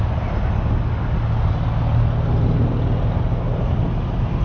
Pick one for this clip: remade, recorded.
recorded